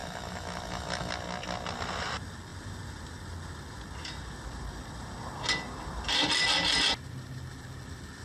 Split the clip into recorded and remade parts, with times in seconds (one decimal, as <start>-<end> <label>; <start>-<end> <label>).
0.0-1.1 remade; 1.1-8.2 recorded